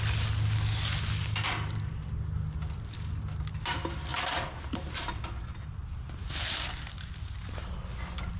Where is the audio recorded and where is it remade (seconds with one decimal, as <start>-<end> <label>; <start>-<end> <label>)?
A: 0.0-8.4 recorded